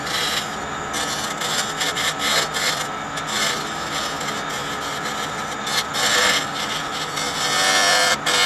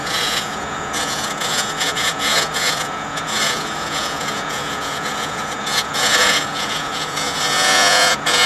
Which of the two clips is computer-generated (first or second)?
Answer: second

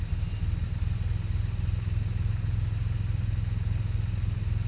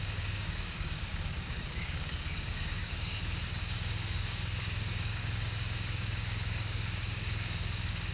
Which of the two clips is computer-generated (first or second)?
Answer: second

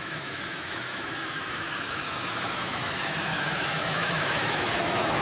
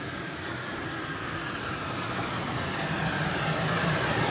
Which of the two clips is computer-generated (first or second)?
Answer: first